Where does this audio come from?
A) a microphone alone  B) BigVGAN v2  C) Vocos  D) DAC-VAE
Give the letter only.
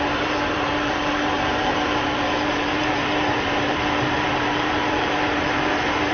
B